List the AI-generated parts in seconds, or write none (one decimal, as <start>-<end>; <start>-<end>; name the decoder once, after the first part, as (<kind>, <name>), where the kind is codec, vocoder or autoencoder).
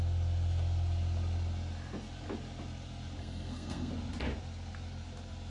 3.2-3.9 (codec, SNAC)